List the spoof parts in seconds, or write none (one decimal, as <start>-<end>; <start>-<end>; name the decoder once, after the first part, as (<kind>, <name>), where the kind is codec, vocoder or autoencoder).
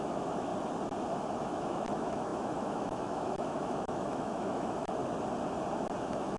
0.0-0.5 (autoencoder, DAC-VAE); 1.4-5.0; 6.0-6.4